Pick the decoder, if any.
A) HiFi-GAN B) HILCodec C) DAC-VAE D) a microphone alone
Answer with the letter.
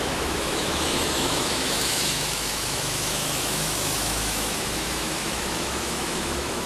C